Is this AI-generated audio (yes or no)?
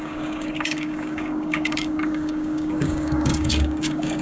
yes